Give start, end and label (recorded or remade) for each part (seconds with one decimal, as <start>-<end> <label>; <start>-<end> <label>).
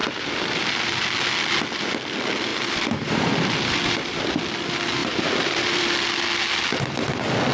0.0-1.0 remade; 1.0-2.5 recorded; 2.5-4.4 remade; 4.4-5.0 recorded; 5.0-5.8 remade; 5.8-7.5 recorded